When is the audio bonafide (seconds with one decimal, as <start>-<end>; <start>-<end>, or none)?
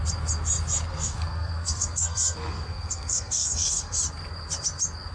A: 0.0-0.9; 4.0-5.1